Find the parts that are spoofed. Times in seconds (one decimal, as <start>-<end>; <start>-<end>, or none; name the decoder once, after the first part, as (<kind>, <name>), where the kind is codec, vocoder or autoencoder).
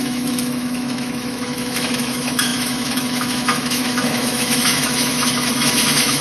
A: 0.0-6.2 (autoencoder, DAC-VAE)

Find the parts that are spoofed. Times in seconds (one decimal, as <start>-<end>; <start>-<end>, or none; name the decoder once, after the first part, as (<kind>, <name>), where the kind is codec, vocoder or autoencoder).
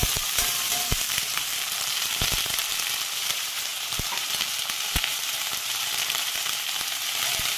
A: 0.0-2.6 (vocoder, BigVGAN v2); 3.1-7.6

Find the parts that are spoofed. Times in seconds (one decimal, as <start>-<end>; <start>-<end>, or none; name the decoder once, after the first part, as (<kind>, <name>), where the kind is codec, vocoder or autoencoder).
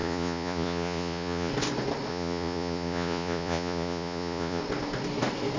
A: 0.0-1.5 (vocoder, Vocos); 2.1-4.6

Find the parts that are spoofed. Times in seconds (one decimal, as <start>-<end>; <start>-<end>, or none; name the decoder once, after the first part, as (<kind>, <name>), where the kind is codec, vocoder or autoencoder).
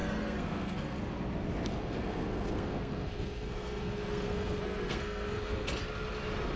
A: 0.0-1.0 (codec, SNAC); 1.7-5.7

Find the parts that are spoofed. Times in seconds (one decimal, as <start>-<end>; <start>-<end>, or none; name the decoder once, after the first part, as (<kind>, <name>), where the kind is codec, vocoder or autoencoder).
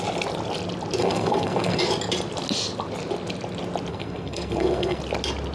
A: 1.0-1.8 (codec, SNAC); 3.9-5.0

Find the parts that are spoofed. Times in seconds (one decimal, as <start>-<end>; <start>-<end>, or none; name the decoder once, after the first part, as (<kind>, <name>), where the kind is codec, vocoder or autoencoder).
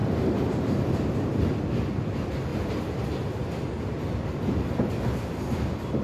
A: 0.0-0.6 (vocoder, BigVGAN v2); 2.5-3.0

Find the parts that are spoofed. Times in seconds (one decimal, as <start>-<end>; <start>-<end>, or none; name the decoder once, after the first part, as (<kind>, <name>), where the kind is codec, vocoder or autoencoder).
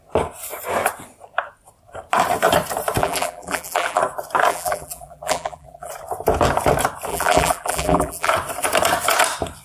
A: 3.0-4.0 (vocoder, BigVGAN v2); 4.5-5.9; 7.1-8.3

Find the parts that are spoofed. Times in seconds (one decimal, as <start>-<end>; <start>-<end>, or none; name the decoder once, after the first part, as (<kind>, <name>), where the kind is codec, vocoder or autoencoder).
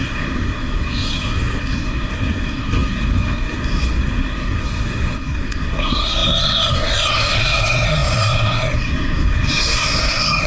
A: 0.0-10.5 (codec, SNAC)